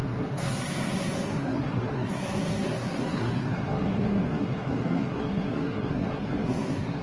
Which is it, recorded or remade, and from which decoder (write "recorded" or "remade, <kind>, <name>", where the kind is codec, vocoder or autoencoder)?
remade, codec, SNAC